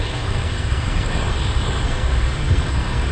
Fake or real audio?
fake